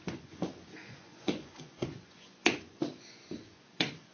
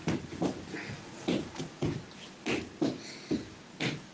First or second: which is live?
second